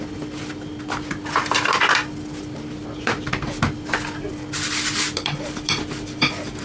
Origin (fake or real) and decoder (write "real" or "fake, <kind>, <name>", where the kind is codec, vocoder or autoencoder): real